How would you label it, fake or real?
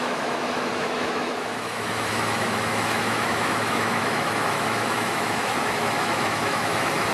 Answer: fake